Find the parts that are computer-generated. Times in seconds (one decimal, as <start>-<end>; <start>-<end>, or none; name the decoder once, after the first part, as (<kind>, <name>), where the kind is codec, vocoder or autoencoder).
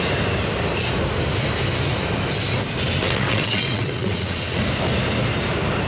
3.0-4.6 (vocoder, WaveNeXt)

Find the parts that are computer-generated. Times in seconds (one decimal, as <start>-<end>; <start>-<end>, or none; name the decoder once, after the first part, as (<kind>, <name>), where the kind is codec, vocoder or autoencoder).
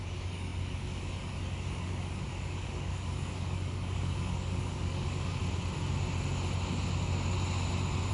0.0-5.4 (codec, DAC)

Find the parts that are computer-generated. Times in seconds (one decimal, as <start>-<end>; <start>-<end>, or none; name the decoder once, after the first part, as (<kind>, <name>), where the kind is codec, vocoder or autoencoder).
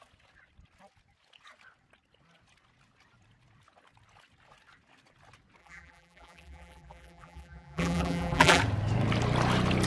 5.6-8.6 (vocoder, BigVGAN v2)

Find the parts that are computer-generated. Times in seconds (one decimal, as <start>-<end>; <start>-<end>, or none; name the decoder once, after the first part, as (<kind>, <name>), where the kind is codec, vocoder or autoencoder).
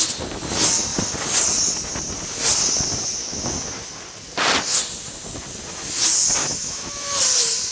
3.2-3.8 (autoencoder, DAC-VAE); 6.4-6.9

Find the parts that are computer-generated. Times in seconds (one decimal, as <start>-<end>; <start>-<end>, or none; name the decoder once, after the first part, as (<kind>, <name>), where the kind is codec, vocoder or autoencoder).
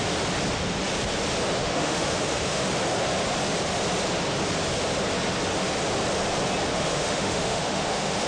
1.6-2.7 (autoencoder, DAC-VAE); 6.7-8.3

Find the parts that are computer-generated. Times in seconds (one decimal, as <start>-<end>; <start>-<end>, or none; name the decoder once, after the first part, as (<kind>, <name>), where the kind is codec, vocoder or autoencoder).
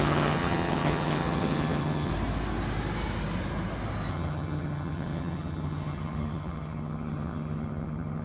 0.0-2.1 (vocoder, HiFi-GAN); 4.1-8.2